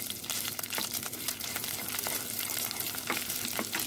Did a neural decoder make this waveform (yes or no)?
yes